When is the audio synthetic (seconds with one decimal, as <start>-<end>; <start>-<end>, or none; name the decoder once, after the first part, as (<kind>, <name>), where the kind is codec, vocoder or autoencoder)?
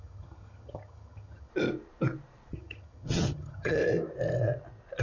0.0-1.5 (vocoder, HiFi-GAN); 2.5-3.8